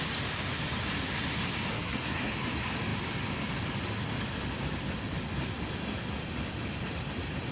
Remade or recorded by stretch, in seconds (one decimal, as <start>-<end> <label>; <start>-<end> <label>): 0.0-1.7 recorded; 1.7-2.3 remade; 2.3-7.5 recorded